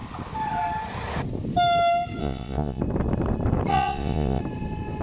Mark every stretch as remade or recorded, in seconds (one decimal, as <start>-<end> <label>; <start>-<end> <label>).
0.0-2.2 recorded; 2.2-2.8 remade; 2.8-3.7 recorded; 3.7-4.4 remade; 4.4-5.0 recorded